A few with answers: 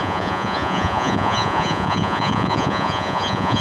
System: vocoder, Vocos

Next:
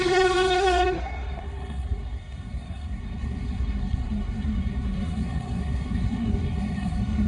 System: codec, SNAC